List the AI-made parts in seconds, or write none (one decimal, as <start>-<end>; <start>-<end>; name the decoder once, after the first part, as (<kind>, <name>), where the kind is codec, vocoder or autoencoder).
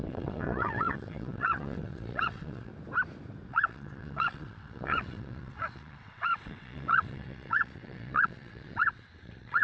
0.0-2.7 (vocoder, WaveNeXt); 3.5-9.6